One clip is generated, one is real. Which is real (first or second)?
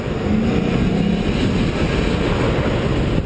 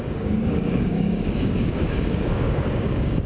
first